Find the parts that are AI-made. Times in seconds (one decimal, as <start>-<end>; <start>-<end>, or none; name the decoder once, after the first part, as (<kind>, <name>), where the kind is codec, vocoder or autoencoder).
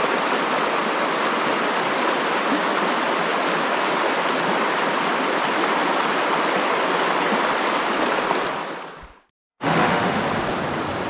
9.5-10.2 (autoencoder, DAC-VAE)